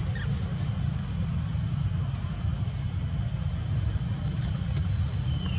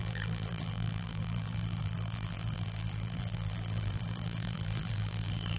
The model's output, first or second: second